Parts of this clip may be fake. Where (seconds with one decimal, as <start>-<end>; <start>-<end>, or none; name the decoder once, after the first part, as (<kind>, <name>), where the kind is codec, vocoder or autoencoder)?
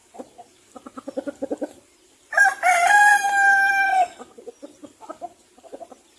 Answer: 0.0-3.7 (vocoder, BigVGAN v2)